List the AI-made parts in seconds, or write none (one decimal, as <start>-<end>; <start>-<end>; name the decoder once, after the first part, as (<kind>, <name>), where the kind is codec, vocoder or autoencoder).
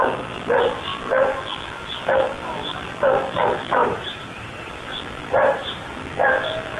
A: 0.0-3.8 (vocoder, BigVGAN v2); 4.7-5.3; 5.9-6.8